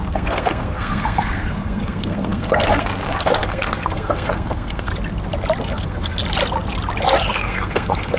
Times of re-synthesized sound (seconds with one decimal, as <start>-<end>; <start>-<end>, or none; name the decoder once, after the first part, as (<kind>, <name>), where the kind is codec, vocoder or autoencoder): 0.0-4.9 (codec, SNAC); 5.6-6.2; 7.2-8.2